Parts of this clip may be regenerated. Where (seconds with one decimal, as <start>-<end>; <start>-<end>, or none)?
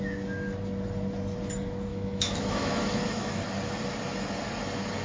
1.9-3.4